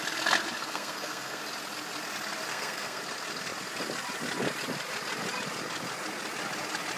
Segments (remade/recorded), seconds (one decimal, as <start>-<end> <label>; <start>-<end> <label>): 0.0-0.6 recorded; 0.6-1.4 remade; 1.4-2.5 recorded; 2.5-3.0 remade; 3.0-7.0 recorded